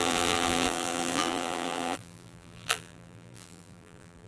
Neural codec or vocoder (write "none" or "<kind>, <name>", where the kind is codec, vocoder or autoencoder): vocoder, BigVGAN v2